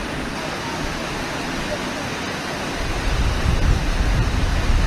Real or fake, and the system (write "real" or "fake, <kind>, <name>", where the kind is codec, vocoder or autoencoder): real